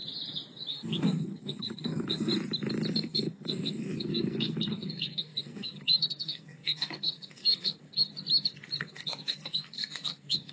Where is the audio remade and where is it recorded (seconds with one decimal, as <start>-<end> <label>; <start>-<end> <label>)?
0.0-0.7 recorded; 0.7-2.3 remade; 2.3-2.9 recorded; 2.9-8.1 remade; 8.1-8.8 recorded; 8.8-10.5 remade

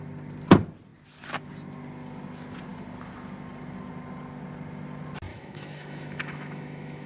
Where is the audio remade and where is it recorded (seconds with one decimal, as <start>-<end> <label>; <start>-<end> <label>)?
0.0-5.3 recorded; 5.3-7.1 remade

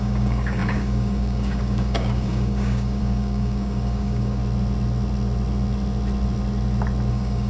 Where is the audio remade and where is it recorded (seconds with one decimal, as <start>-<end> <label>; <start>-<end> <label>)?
0.0-4.4 remade; 4.4-7.1 recorded; 7.1-7.5 remade

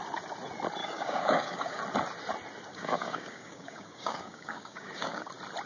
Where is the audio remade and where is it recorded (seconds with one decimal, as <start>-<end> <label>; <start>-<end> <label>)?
0.0-0.8 recorded; 0.8-1.8 remade; 1.8-2.7 recorded; 2.7-5.3 remade; 5.3-5.7 recorded